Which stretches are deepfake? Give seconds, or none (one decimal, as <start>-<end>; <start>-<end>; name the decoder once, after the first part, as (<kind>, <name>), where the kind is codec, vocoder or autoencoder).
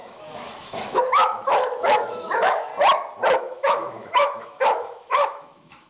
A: 0.0-2.7 (autoencoder, DAC-VAE); 3.4-5.9